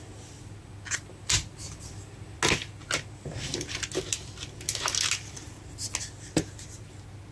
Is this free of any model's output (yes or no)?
yes